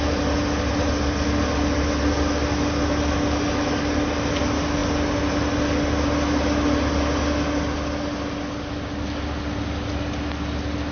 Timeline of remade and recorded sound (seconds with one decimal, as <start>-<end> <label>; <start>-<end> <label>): 0.0-10.9 recorded